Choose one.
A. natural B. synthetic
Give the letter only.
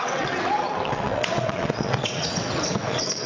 B